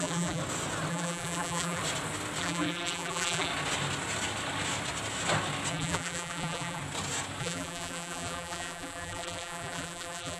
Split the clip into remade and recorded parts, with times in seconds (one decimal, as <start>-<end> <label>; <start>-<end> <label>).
0.0-0.4 remade; 0.4-0.9 recorded; 0.9-1.8 remade; 1.8-2.4 recorded; 2.4-3.5 remade; 3.5-5.7 recorded; 5.7-6.8 remade; 6.8-7.4 recorded; 7.4-10.4 remade